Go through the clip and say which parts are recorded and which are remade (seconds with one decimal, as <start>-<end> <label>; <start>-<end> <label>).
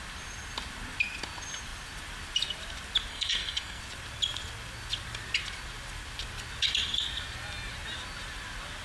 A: 0.0-3.1 recorded; 3.1-3.8 remade; 3.8-8.8 recorded